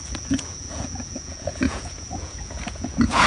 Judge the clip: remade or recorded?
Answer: remade